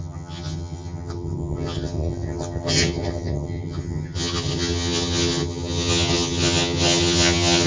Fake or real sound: fake